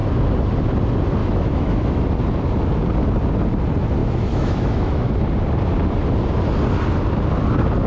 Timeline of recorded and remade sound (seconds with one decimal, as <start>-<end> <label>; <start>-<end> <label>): 0.0-1.2 recorded; 1.2-2.0 remade; 2.0-4.0 recorded; 4.0-5.1 remade; 5.1-7.9 recorded